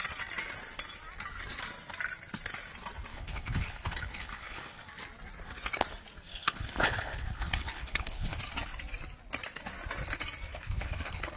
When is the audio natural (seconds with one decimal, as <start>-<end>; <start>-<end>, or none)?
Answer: 0.0-3.1; 4.8-6.3; 8.4-10.5